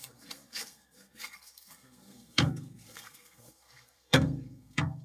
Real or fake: fake